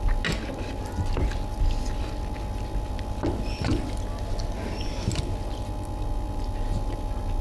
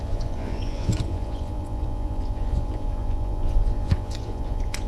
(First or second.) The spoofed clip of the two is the second